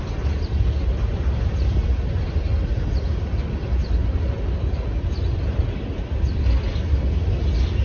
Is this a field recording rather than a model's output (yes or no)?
yes